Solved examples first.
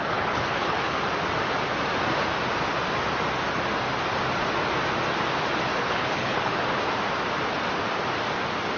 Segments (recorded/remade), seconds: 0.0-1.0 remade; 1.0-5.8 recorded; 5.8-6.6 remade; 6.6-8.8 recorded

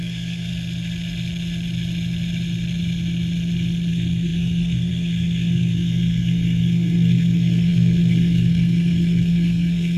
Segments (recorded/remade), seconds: 0.0-0.5 remade; 0.5-3.9 recorded; 3.9-10.0 remade

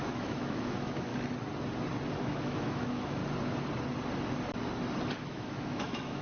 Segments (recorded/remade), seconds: 0.0-1.1 remade; 1.1-2.2 recorded; 2.2-3.2 remade; 3.2-5.2 recorded; 5.2-6.2 remade

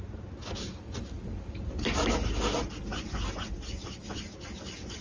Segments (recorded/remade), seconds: 0.0-5.0 recorded

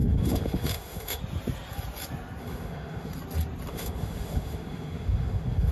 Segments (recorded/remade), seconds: 0.0-1.2 remade; 1.2-2.4 recorded; 2.4-3.1 remade; 3.1-3.7 recorded; 3.7-5.7 remade

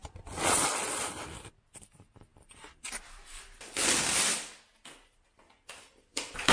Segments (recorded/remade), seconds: 0.0-1.1 remade; 1.1-6.5 recorded